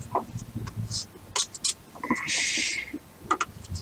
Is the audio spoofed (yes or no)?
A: no